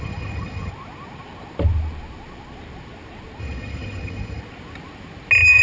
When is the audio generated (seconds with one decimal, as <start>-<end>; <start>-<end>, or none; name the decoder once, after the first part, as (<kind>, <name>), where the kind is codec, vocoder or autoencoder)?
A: 0.0-0.7 (vocoder, HiFi-GAN); 3.4-4.4